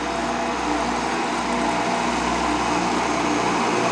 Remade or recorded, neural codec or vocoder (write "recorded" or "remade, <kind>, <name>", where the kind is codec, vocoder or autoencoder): recorded